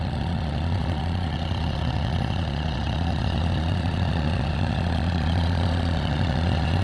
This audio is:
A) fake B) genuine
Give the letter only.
A